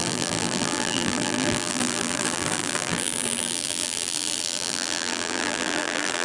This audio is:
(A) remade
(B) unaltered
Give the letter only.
A